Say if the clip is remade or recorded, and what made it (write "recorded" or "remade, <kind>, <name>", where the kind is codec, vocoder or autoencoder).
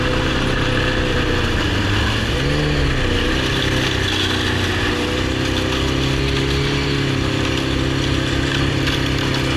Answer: recorded